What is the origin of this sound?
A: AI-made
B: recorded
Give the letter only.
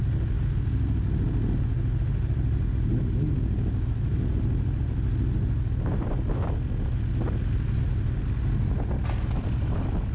B